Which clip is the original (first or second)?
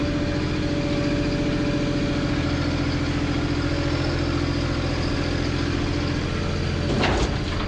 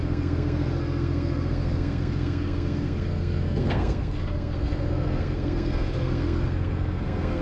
first